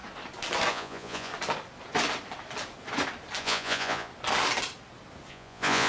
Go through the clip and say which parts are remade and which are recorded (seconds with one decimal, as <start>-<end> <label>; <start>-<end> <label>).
0.0-0.7 recorded; 0.7-1.3 remade; 1.3-3.4 recorded; 3.4-4.1 remade; 4.1-5.3 recorded; 5.3-5.9 remade